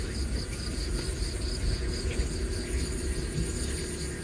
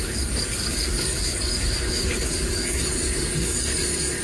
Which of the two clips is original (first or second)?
first